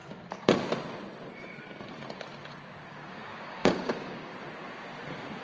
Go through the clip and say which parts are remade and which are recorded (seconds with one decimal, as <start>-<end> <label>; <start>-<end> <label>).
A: 0.0-2.9 recorded; 2.9-4.3 remade; 4.3-5.4 recorded

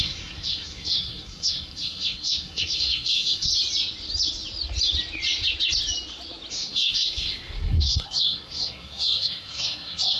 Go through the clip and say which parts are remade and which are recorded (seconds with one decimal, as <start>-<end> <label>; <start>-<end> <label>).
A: 0.0-3.5 remade; 3.5-6.5 recorded; 6.5-10.2 remade

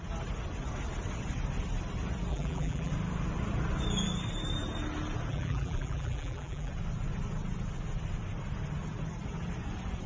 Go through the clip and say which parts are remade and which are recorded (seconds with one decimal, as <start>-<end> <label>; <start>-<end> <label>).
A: 0.0-2.3 recorded; 2.3-2.9 remade; 2.9-5.3 recorded; 5.3-6.7 remade; 6.7-10.1 recorded

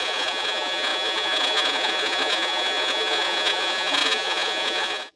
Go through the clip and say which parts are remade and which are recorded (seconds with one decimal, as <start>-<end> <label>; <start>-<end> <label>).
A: 0.0-5.2 remade

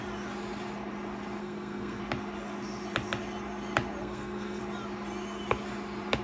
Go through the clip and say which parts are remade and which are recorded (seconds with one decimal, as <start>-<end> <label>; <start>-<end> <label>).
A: 0.0-1.4 recorded; 1.4-2.0 remade; 2.0-4.0 recorded; 4.0-4.6 remade; 4.6-6.2 recorded

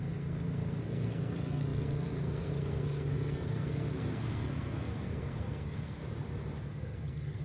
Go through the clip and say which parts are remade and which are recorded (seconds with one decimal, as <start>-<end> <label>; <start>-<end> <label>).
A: 0.0-6.0 remade; 6.0-6.6 recorded; 6.6-7.4 remade